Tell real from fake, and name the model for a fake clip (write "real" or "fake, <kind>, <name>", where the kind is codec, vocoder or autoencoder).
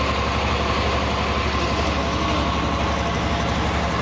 real